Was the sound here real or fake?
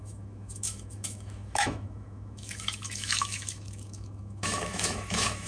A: fake